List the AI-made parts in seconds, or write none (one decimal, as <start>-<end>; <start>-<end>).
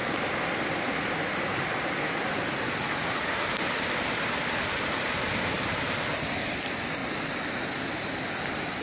0.0-7.0; 8.0-8.8